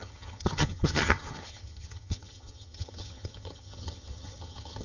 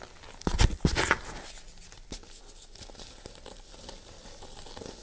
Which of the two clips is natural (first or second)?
second